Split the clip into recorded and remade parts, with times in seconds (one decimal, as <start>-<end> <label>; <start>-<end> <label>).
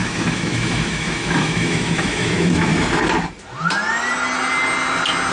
0.0-2.7 remade; 2.7-5.3 recorded